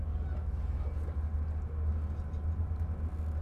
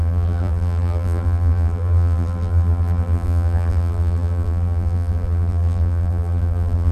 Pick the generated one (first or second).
second